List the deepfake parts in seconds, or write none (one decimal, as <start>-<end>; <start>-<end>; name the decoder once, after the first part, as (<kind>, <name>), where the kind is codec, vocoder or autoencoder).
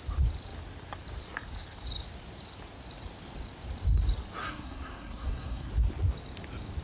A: 4.4-5.7 (codec, SNAC)